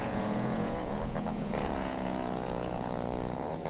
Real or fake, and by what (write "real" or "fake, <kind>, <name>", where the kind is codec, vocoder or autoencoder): fake, vocoder, Vocos